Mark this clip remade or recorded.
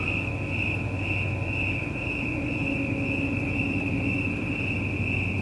recorded